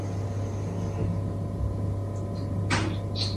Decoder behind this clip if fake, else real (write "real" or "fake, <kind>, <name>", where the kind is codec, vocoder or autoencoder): real